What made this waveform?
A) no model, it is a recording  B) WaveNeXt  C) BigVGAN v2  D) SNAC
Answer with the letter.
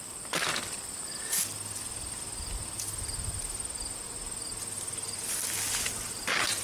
A